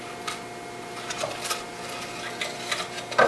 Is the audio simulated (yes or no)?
no